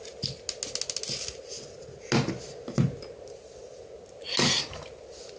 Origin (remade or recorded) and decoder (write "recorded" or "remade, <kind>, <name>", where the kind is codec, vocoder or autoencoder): recorded